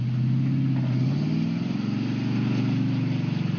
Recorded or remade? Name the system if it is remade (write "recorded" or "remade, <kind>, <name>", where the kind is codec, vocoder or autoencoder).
recorded